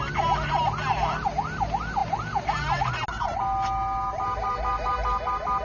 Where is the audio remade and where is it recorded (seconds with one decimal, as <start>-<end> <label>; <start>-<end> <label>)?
0.0-5.6 recorded